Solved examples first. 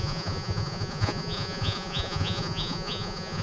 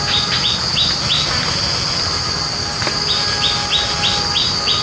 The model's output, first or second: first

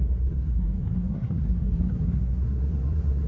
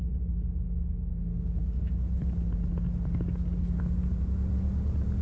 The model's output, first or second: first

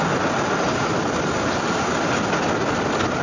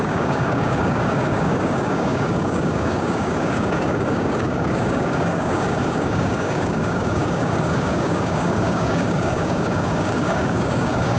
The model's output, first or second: second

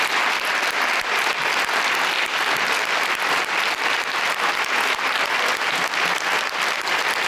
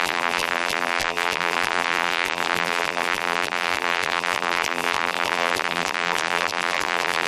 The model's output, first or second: second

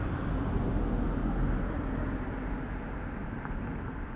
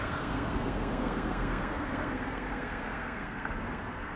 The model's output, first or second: second